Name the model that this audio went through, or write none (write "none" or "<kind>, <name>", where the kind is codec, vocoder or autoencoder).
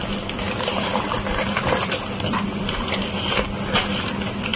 none